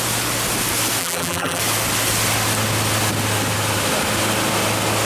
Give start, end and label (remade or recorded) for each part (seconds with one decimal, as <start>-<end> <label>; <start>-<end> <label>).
0.0-1.0 recorded; 1.0-1.6 remade; 1.6-5.0 recorded

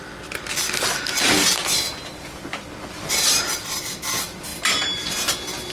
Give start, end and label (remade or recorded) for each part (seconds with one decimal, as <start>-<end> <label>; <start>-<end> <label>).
0.0-1.6 recorded; 1.6-3.6 remade; 3.6-4.5 recorded; 4.5-5.1 remade; 5.1-5.7 recorded

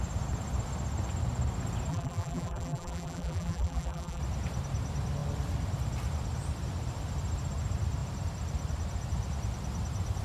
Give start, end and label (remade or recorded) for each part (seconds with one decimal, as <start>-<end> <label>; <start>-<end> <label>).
0.0-1.9 recorded; 1.9-4.2 remade; 4.2-10.2 recorded

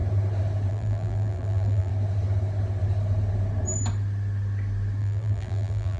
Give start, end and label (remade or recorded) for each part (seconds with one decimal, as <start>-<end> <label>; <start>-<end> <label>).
0.0-0.7 recorded; 0.7-1.9 remade; 1.9-5.0 recorded; 5.0-6.0 remade

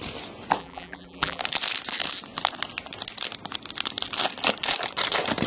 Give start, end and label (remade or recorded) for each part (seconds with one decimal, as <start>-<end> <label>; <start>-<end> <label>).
0.0-0.6 recorded; 0.6-1.4 remade; 1.4-5.5 recorded